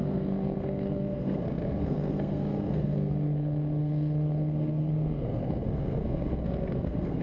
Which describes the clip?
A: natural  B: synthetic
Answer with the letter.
B